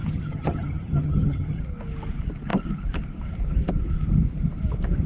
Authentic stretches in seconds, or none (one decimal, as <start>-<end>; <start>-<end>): 1.6-5.1